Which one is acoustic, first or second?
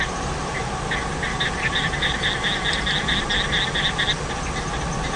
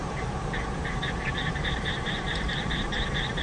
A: first